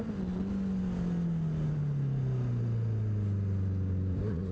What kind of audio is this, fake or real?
real